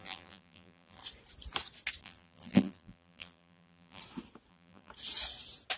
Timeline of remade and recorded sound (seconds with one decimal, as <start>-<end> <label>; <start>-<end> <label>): 0.0-1.0 remade; 1.0-2.0 recorded; 2.0-4.0 remade; 4.0-4.5 recorded; 4.5-4.9 remade; 4.9-5.8 recorded